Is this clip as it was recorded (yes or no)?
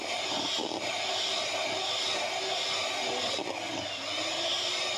yes